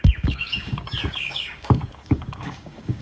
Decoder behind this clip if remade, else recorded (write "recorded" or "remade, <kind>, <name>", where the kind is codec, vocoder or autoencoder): remade, codec, DAC